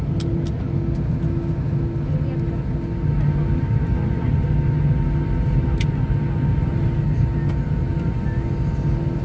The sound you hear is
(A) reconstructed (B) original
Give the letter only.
B